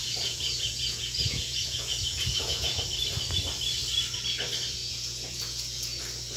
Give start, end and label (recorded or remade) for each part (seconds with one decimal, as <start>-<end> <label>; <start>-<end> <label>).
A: 0.0-2.8 remade; 2.8-4.8 recorded; 4.8-6.0 remade; 6.0-6.4 recorded